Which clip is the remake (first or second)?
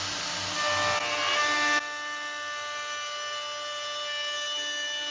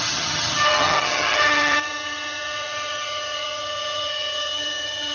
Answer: second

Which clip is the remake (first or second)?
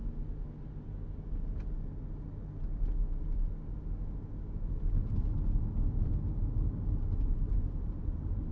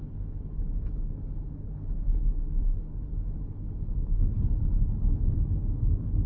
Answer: second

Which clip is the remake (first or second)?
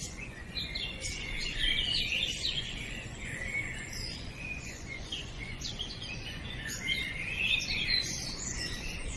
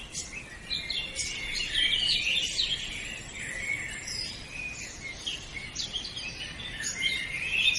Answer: first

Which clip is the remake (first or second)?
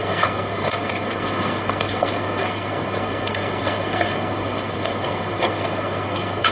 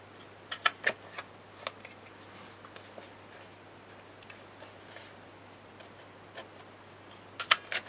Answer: first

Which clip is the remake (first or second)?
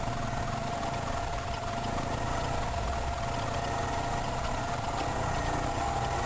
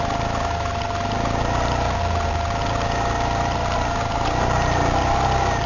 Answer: first